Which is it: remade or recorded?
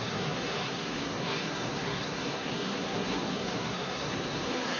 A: remade